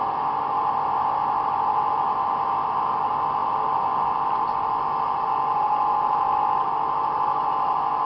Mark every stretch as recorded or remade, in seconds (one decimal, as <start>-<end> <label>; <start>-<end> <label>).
0.0-8.0 recorded